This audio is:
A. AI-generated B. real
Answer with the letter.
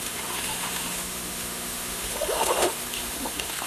A